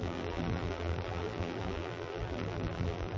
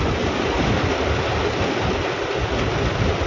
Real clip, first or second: second